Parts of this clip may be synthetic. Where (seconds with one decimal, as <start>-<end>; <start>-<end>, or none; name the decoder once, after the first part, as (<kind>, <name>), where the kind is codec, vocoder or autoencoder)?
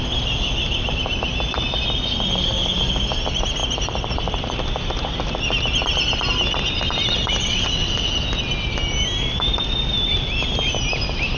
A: 7.4-8.1 (vocoder, WaveNeXt)